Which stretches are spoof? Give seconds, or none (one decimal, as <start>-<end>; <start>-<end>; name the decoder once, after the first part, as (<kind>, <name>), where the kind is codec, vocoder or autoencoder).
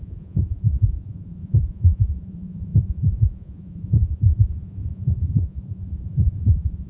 0.0-6.9 (vocoder, Vocos)